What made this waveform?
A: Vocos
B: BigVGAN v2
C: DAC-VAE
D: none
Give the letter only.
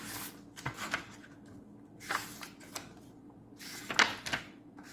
D